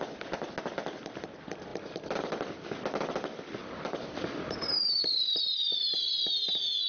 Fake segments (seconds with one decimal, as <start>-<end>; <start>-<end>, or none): 1.7-2.3; 3.6-5.5